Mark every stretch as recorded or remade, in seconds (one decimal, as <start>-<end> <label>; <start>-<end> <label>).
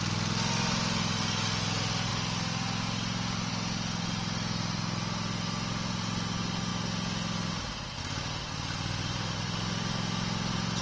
0.0-10.8 recorded